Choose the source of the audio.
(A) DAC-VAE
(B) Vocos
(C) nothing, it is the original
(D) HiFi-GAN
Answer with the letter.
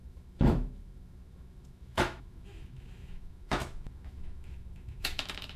A